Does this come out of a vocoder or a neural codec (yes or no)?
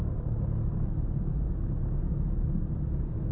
no